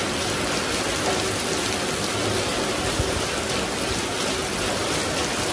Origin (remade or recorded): recorded